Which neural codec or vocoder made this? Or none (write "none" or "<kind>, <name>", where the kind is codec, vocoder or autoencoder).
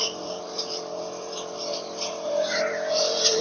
vocoder, BigVGAN v2